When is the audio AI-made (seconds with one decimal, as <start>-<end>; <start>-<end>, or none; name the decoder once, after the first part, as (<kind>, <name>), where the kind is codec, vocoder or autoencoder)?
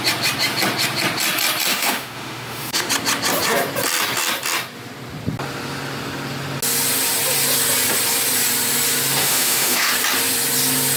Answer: 1.7-2.9 (autoencoder, DAC-VAE); 9.2-9.9